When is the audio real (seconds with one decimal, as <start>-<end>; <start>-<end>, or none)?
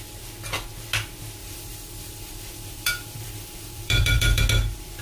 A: 0.0-1.4; 4.4-5.0